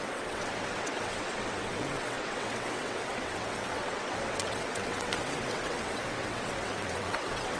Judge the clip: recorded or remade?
remade